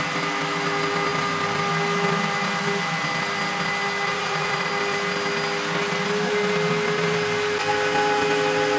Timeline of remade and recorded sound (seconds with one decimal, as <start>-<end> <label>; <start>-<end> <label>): 0.0-4.1 recorded; 4.1-4.7 remade; 4.7-8.8 recorded